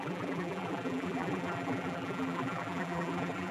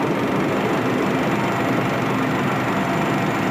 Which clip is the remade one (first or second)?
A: first